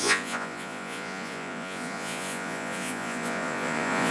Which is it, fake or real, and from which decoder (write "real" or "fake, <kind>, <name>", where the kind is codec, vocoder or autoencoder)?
fake, vocoder, Vocos